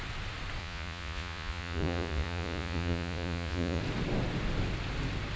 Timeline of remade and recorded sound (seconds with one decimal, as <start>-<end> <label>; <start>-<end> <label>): 0.0-0.6 recorded; 0.6-3.8 remade; 3.8-5.4 recorded